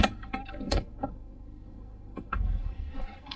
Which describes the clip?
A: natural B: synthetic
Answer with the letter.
B